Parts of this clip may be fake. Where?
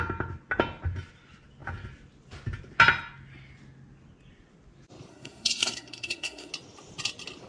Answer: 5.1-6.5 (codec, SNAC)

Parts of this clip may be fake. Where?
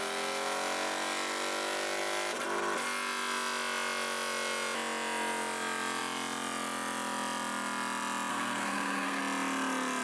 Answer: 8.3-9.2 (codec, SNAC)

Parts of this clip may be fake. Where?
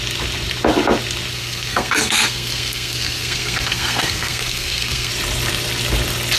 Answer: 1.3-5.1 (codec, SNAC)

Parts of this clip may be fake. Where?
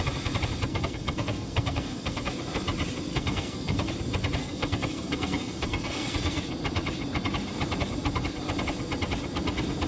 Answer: 0.7-2.3 (codec, SNAC); 3.1-3.9; 4.4-6.4